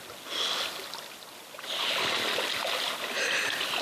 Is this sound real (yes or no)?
yes